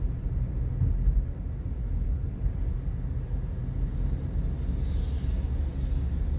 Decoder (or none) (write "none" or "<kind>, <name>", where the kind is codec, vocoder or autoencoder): none